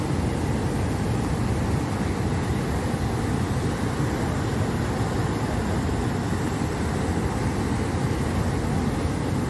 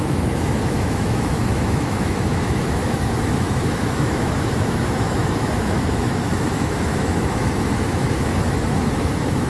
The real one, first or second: first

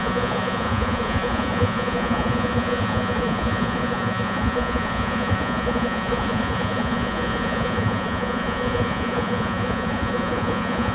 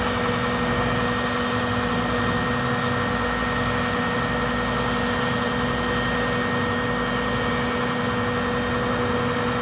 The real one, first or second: second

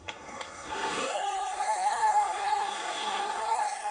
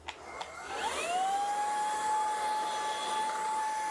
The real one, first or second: second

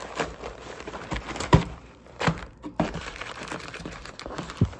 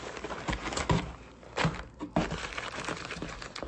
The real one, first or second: second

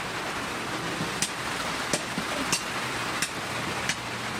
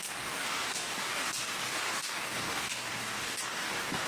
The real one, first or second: first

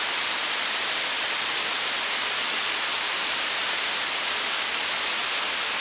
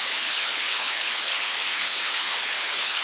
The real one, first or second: first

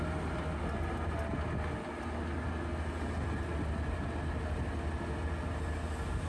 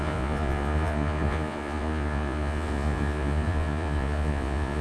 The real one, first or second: first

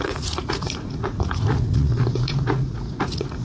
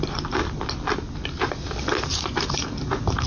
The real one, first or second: second